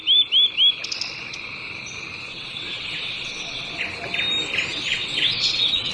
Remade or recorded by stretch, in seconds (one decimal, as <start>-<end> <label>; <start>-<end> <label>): 0.0-2.3 recorded; 2.3-3.8 remade; 3.8-4.7 recorded; 4.7-5.9 remade